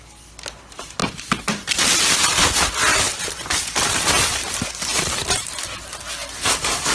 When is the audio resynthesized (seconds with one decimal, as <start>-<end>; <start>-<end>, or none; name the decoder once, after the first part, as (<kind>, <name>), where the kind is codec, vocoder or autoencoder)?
1.0-1.9 (vocoder, BigVGAN v2); 2.9-3.6